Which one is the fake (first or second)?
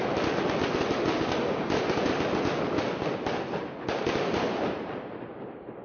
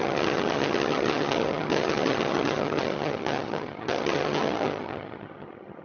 second